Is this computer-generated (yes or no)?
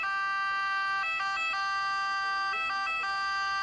no